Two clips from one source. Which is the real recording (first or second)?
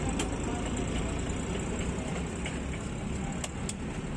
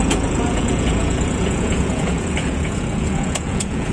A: first